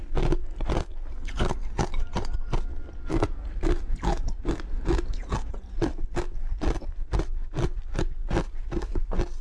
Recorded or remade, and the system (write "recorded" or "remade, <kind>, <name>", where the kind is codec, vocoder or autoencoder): recorded